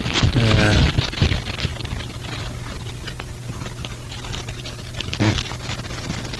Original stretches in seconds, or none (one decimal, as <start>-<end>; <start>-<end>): 0.0-6.4